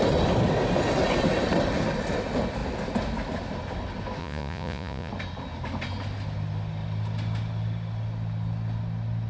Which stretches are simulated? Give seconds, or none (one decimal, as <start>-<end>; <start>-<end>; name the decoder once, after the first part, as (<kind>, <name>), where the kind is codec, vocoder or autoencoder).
4.2-5.1 (vocoder, Vocos)